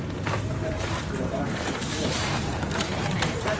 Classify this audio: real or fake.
fake